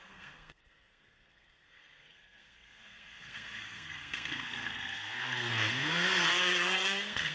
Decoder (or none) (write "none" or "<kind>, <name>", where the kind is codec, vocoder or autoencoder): codec, SNAC